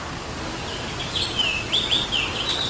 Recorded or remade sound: recorded